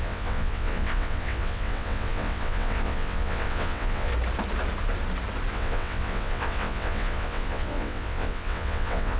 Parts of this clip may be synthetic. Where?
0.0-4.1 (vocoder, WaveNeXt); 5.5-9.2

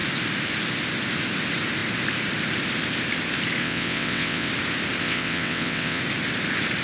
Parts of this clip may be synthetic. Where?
3.6-4.5 (vocoder, WaveNeXt); 5.0-6.0

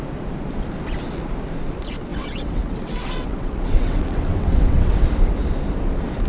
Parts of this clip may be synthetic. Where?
2.1-5.0 (vocoder, WaveNeXt)

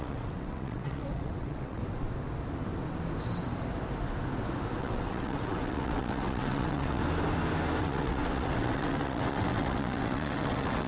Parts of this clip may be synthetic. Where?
0.0-1.8 (vocoder, WaveNeXt); 4.8-7.0; 7.8-10.9

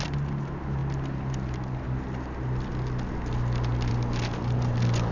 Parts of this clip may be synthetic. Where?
none